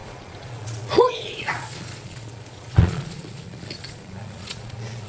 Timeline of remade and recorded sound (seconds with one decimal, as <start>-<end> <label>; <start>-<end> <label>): 0.0-5.1 remade